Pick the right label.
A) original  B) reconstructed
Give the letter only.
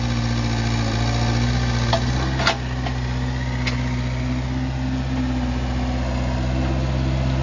A